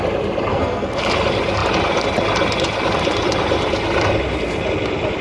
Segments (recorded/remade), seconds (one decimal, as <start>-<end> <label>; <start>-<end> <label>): 0.0-0.5 recorded; 0.5-1.0 remade; 1.0-5.2 recorded